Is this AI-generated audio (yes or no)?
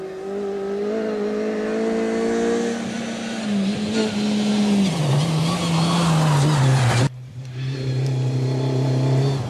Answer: no